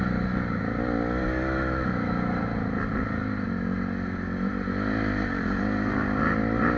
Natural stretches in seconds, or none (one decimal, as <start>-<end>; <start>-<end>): 0.0-1.2; 2.4-6.8